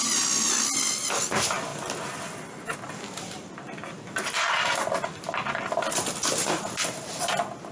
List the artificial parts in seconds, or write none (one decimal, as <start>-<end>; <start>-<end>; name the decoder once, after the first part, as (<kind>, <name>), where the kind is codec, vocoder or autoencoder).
none